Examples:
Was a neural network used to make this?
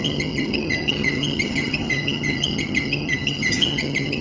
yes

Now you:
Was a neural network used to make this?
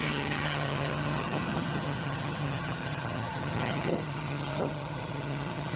yes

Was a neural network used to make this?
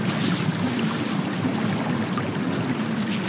no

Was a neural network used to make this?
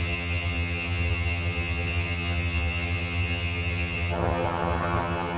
yes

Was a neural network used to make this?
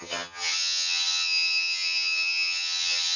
yes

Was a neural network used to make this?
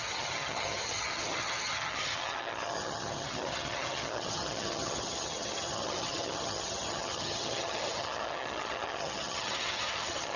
yes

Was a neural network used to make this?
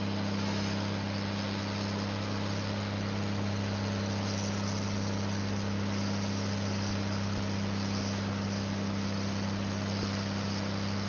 no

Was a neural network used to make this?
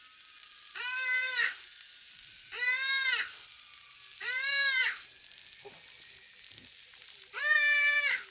no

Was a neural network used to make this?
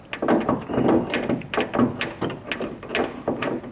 no